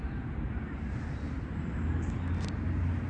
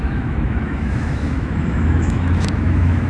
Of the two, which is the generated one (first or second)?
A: second